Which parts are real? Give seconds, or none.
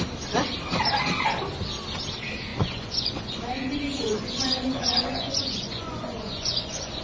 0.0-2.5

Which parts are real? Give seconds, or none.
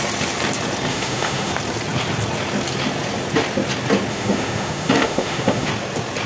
0.0-0.9; 1.5-4.1; 5.7-6.3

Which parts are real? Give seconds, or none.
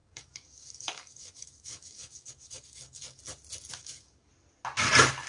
3.2-3.8; 4.3-5.3